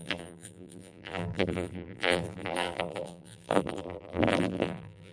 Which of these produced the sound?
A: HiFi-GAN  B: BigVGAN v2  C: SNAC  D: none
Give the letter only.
B